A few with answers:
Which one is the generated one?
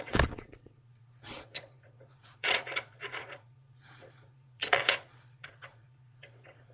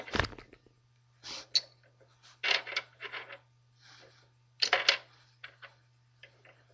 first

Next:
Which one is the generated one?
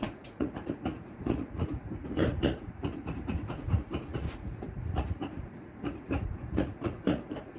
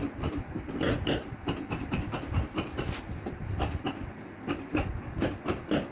first